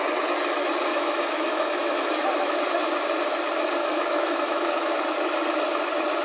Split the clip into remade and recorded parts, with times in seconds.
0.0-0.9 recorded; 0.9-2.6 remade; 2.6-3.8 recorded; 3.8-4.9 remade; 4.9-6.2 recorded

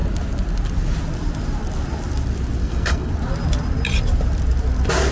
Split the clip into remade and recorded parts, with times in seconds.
0.0-2.6 recorded; 2.6-3.1 remade; 3.1-5.1 recorded